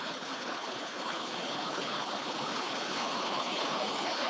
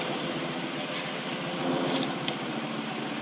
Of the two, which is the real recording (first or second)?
second